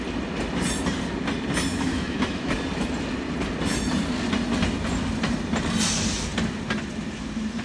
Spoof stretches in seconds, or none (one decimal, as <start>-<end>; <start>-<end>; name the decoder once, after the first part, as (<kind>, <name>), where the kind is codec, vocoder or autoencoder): 1.7-2.5 (autoencoder, DAC-VAE)